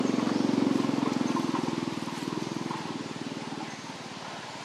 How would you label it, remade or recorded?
recorded